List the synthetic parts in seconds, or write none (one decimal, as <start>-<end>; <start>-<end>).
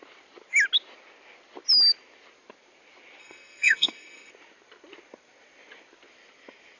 3.2-4.3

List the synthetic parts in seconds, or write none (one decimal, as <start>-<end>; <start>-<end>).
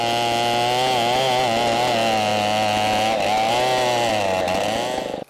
none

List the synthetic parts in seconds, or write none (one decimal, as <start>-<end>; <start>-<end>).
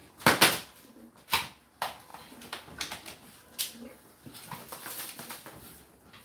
none